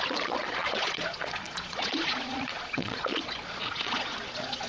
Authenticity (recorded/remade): remade